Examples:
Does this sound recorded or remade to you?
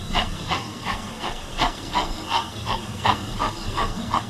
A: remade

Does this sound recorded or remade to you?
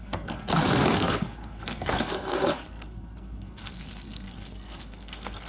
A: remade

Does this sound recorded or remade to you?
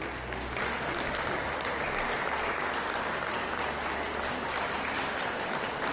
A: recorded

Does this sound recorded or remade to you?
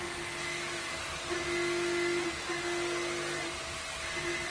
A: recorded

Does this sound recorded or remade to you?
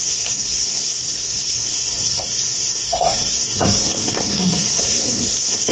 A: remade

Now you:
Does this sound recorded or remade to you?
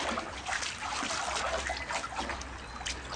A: recorded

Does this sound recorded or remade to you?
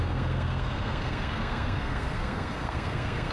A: remade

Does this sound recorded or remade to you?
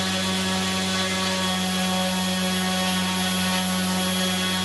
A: recorded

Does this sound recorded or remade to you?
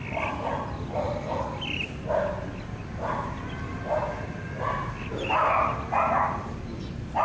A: recorded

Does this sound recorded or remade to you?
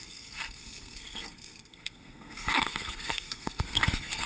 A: remade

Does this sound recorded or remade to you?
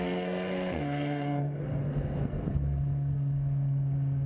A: remade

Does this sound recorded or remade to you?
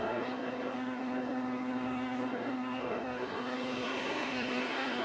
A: remade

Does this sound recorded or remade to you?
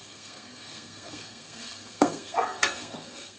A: remade